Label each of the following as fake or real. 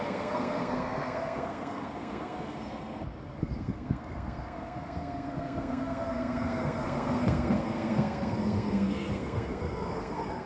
fake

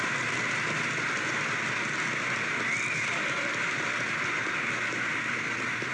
real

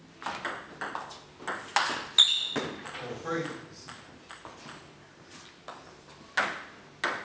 real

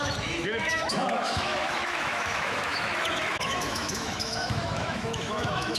fake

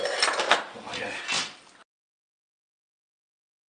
real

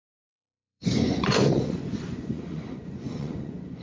fake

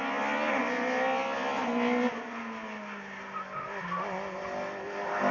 real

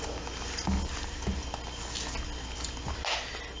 real